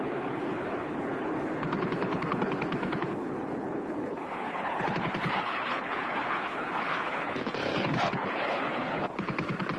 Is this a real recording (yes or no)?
no